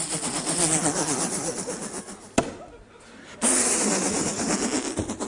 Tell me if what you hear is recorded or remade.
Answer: remade